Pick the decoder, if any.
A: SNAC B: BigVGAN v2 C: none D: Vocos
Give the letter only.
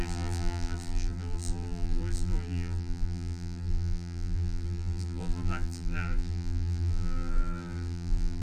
B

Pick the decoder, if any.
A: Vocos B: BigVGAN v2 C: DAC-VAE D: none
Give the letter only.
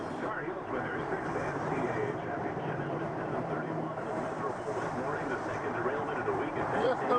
B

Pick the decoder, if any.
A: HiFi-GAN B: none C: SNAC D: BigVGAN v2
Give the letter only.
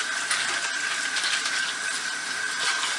B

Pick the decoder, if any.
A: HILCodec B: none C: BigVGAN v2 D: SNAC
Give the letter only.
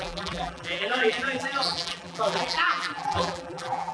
C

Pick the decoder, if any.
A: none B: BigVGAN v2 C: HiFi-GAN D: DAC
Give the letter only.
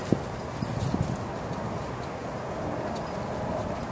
A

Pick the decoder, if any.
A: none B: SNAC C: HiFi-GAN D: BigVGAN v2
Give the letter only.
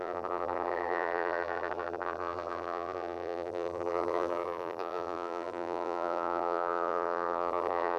D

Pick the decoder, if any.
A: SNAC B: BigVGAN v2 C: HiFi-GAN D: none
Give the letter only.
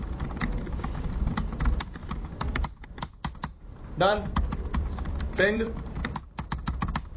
B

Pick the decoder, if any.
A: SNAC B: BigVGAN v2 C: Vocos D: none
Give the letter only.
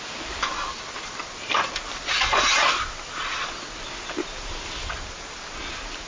D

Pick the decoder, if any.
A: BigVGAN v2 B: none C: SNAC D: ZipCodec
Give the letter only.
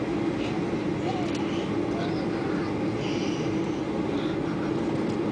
B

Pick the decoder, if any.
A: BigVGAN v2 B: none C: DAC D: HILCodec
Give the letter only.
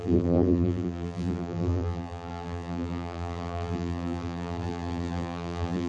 A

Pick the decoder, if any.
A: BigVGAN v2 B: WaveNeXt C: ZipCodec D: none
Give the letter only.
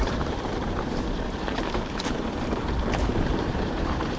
A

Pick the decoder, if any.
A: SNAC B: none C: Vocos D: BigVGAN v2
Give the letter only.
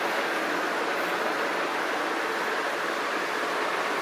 B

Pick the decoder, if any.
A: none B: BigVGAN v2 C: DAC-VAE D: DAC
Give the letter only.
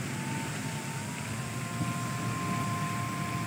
A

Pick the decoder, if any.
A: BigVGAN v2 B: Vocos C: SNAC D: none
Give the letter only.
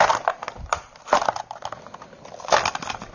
D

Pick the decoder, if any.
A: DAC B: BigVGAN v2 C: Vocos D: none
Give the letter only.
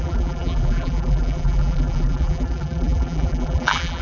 B